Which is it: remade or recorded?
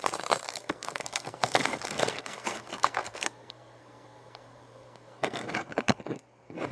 remade